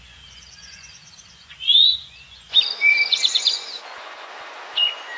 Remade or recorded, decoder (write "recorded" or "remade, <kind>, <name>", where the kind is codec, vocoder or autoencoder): remade, vocoder, Vocos